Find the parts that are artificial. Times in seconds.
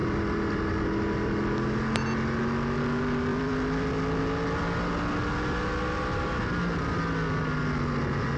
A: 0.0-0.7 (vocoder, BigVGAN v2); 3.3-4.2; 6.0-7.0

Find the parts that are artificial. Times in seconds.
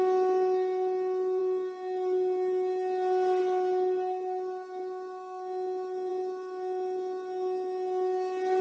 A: none